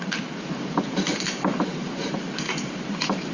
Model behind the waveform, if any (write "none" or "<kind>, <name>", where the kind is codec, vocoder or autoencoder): vocoder, BigVGAN v2